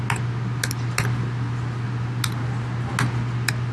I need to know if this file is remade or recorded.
recorded